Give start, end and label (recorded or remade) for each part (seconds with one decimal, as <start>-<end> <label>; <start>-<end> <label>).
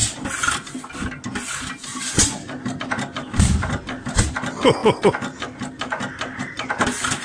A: 0.0-2.8 recorded; 2.8-7.2 remade